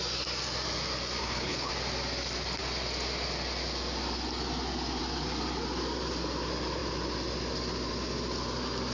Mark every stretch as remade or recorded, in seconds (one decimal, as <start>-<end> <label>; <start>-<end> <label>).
0.0-1.2 recorded; 1.2-1.7 remade; 1.7-8.9 recorded